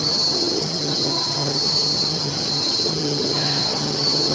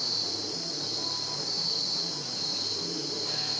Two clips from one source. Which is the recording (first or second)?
second